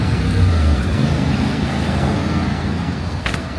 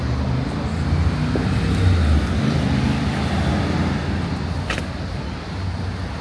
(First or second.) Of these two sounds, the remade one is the first